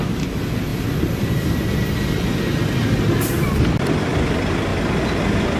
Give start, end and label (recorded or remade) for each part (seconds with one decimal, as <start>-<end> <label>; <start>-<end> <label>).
0.0-5.6 recorded